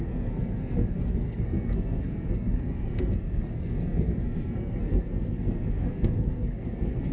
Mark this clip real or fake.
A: fake